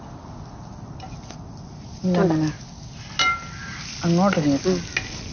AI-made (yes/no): no